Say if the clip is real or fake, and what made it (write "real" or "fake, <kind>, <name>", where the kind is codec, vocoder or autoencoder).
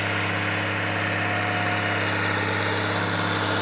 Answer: real